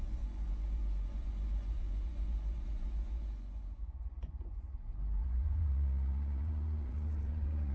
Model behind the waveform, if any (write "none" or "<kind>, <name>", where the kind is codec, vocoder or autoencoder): vocoder, Vocos